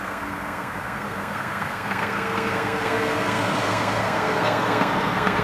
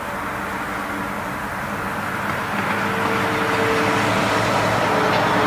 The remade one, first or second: first